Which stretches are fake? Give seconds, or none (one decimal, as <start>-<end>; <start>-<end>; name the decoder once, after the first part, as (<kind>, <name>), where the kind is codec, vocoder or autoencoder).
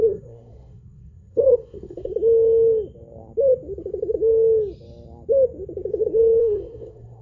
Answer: 0.0-2.1 (codec, SNAC); 6.4-7.2